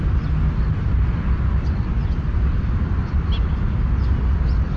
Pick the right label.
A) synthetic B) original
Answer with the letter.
B